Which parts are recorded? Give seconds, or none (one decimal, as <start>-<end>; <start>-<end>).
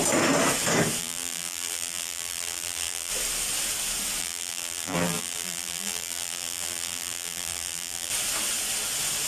0.0-1.0; 3.1-4.2; 8.1-9.3